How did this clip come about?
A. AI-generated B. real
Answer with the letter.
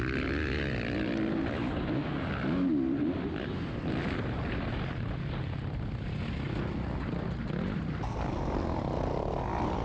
B